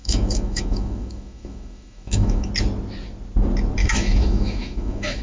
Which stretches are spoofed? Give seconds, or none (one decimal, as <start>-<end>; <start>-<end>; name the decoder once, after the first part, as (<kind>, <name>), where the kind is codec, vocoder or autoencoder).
0.0-2.5 (autoencoder, DAC-VAE); 3.8-5.2